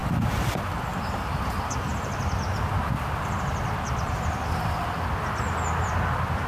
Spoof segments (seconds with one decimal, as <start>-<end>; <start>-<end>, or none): none

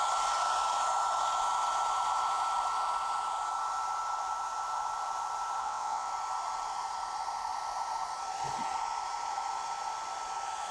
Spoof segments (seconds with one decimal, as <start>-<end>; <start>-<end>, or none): 5.6-6.1

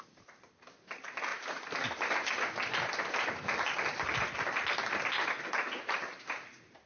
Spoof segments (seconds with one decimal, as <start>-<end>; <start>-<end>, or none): none

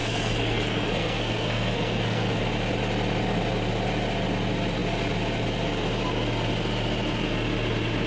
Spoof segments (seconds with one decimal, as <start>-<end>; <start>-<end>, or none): 0.0-2.4

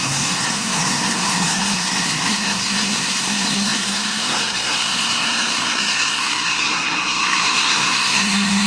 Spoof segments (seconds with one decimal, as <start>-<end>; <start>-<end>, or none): 0.0-8.7

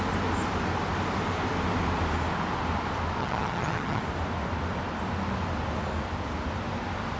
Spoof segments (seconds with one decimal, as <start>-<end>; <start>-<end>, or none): 3.2-4.0

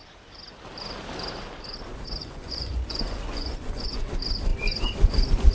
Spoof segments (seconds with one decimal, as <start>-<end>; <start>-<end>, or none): 2.2-4.1

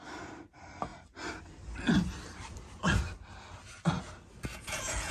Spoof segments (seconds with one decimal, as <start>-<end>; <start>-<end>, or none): 4.5-5.1